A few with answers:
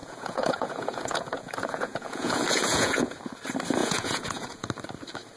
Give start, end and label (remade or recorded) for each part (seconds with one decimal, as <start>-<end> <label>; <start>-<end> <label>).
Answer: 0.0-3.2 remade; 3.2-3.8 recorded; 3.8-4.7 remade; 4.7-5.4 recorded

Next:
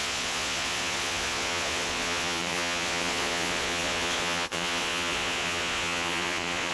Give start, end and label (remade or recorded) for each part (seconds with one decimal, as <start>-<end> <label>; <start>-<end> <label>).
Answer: 0.0-6.7 remade

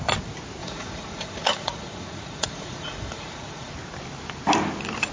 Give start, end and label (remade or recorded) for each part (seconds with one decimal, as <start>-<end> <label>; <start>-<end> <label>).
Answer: 0.0-0.6 recorded; 0.6-3.7 remade; 3.7-5.1 recorded

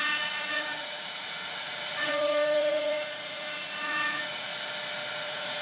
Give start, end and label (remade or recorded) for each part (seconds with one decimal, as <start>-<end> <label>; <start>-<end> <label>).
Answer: 0.0-4.5 remade; 4.5-5.1 recorded; 5.1-5.6 remade

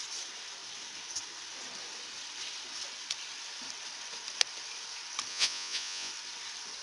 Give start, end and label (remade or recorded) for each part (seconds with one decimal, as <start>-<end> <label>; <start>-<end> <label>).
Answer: 0.0-5.3 recorded; 5.3-6.1 remade; 6.1-6.8 recorded

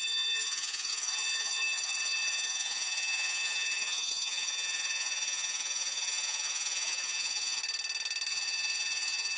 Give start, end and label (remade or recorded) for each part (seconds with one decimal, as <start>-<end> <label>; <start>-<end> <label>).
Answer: 0.0-7.6 remade; 7.6-8.3 recorded; 8.3-9.4 remade

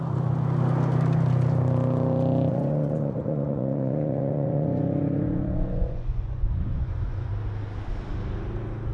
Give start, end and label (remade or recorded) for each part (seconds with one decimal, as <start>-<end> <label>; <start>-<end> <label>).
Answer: 0.0-2.5 recorded; 2.5-7.3 remade; 7.3-8.9 recorded